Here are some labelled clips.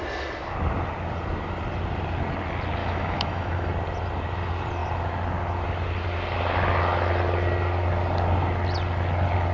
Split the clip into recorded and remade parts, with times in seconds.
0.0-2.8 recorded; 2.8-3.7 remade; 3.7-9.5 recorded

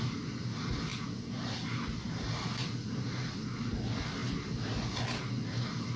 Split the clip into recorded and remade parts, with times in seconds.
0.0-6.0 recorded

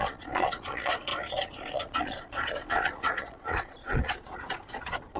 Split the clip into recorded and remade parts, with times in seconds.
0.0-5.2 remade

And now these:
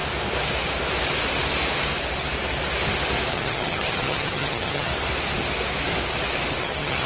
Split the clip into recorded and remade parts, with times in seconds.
0.0-3.3 recorded; 3.3-4.9 remade; 4.9-6.6 recorded; 6.6-7.1 remade